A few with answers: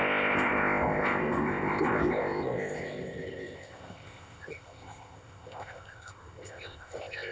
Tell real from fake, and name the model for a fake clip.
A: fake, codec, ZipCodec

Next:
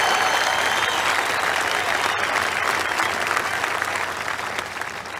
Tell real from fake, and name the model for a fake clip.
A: real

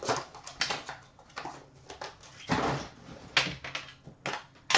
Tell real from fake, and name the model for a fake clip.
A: real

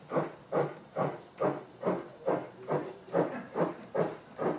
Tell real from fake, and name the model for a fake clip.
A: real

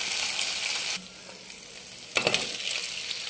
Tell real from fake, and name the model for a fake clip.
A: real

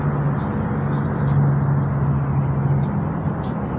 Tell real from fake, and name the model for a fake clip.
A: real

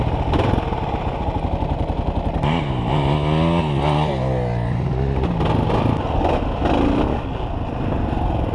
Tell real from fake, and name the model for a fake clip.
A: real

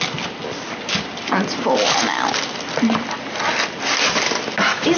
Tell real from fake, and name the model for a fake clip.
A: real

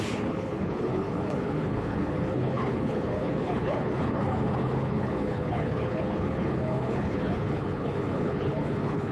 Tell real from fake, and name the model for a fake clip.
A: fake, codec, HILCodec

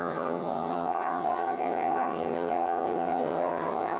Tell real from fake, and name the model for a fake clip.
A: fake, vocoder, HiFi-GAN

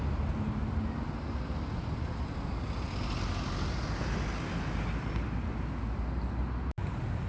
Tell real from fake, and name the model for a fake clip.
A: real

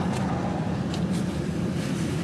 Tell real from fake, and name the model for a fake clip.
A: real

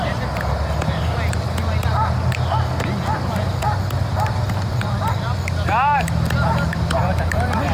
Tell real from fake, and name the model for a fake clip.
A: real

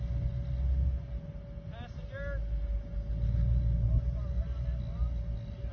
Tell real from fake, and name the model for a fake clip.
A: real